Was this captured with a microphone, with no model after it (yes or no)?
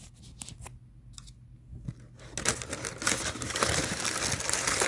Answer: yes